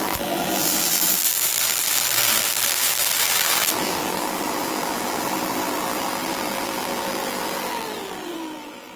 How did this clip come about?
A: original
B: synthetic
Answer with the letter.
B